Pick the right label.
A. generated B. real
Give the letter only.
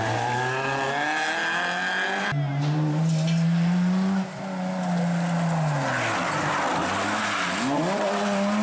B